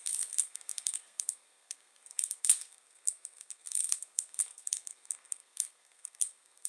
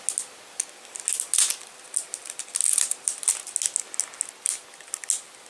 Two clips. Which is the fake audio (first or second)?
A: first